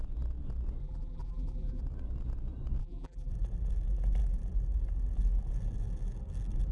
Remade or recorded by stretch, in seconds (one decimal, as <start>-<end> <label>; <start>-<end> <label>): 0.0-0.8 recorded; 0.8-1.8 remade; 1.8-2.8 recorded; 2.8-3.3 remade; 3.3-6.7 recorded